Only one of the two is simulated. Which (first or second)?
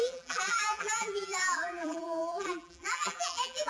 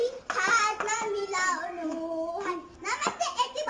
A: first